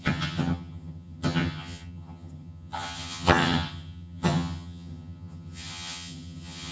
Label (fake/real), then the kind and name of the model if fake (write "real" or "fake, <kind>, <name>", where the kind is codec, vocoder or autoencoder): fake, vocoder, HiFi-GAN